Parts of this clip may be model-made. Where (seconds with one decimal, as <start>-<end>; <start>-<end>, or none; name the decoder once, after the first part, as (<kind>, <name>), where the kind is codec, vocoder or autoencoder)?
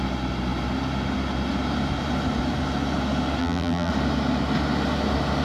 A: 3.4-3.9 (vocoder, BigVGAN v2)